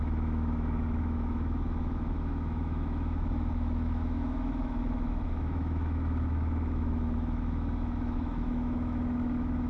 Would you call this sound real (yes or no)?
no